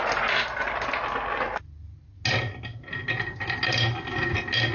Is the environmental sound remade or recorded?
recorded